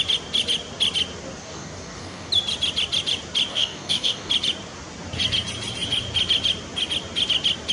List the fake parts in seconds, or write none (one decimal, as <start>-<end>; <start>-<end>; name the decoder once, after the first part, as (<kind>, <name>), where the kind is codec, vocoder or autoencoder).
1.4-2.3 (codec, DAC); 3.5-4.3